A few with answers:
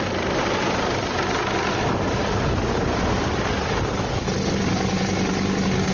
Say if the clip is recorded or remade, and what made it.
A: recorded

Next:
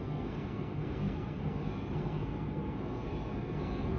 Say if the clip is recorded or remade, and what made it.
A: remade, codec, SNAC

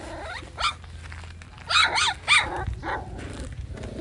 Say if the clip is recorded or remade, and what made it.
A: recorded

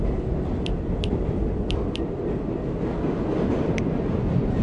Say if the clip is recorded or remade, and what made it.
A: recorded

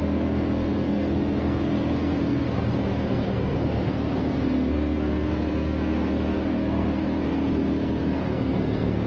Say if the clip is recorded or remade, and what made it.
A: remade, codec, SNAC